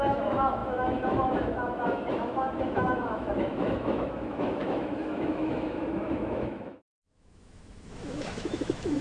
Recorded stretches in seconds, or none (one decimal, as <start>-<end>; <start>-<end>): none